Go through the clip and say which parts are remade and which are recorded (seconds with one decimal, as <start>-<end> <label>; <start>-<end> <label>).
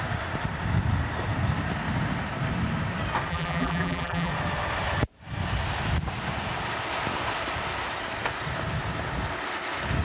0.0-3.3 recorded; 3.3-4.3 remade; 4.3-10.0 recorded